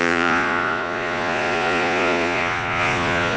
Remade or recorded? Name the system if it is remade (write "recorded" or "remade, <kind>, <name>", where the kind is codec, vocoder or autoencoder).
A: remade, vocoder, Vocos